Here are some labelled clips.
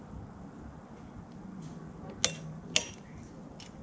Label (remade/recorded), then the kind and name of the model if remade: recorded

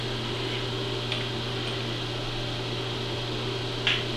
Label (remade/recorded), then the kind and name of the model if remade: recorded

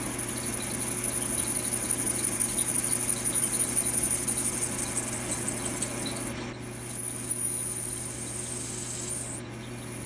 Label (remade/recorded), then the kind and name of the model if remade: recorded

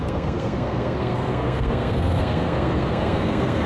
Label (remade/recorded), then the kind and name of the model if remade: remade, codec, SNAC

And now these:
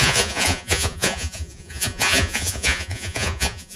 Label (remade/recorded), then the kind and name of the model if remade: remade, vocoder, Vocos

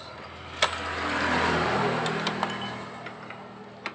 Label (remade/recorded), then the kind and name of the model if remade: recorded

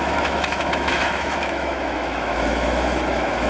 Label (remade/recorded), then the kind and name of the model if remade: remade, autoencoder, DAC-VAE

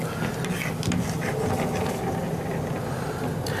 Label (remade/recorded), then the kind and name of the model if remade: recorded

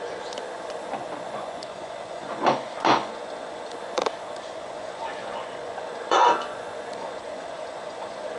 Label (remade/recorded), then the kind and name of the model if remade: remade, vocoder, Vocos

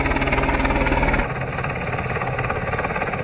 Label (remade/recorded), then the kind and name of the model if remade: recorded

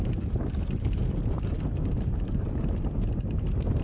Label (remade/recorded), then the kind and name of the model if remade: recorded